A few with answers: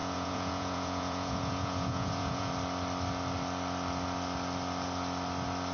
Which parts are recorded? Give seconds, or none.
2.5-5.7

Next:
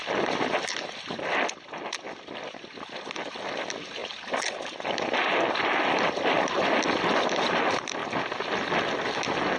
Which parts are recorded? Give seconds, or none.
0.0-9.6

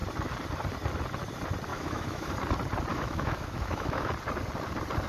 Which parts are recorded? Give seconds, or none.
0.0-1.7; 2.3-2.9; 4.1-5.1

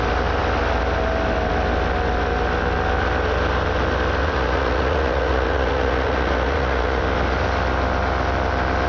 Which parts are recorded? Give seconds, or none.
0.0-4.2; 7.0-8.9

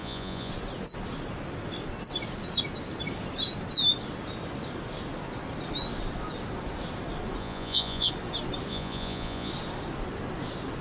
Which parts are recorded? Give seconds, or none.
0.5-7.4; 8.1-8.7; 9.5-10.8

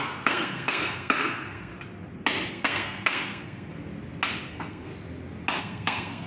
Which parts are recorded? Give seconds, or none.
1.7-2.5; 3.7-4.5; 4.9-5.6

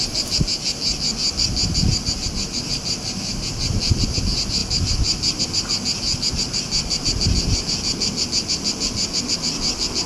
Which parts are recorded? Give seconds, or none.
0.0-10.1